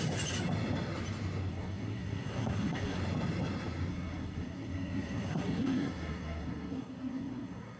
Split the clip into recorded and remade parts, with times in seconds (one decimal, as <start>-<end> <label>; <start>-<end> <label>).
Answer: 0.0-1.5 recorded; 1.5-3.0 remade; 3.0-3.9 recorded; 3.9-7.8 remade